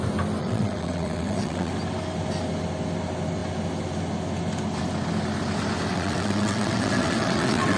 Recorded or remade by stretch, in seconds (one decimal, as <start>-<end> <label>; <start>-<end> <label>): 0.0-0.4 recorded; 0.4-1.7 remade; 1.7-5.9 recorded; 5.9-7.8 remade